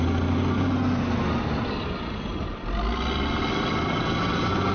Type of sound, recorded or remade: recorded